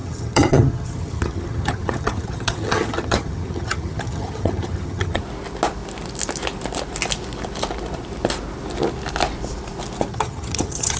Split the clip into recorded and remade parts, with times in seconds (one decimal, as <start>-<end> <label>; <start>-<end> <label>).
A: 0.0-5.2 remade; 5.2-10.1 recorded; 10.1-11.0 remade